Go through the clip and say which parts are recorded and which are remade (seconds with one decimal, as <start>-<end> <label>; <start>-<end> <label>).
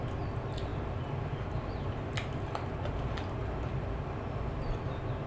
0.0-5.3 recorded